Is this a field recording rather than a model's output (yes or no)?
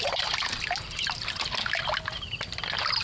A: yes